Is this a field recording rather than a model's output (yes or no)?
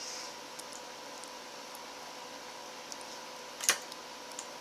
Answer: yes